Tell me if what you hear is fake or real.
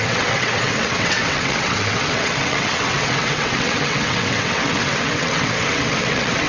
fake